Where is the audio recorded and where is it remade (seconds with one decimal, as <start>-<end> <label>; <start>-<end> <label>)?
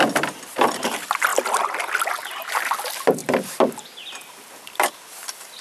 0.0-5.6 recorded